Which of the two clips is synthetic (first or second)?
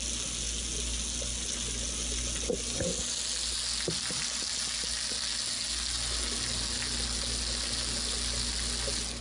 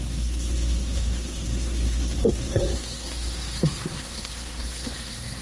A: second